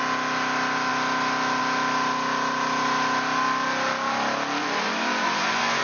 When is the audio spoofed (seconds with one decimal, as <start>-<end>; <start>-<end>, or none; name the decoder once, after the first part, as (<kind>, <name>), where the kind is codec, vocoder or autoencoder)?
4.6-5.8 (vocoder, Vocos)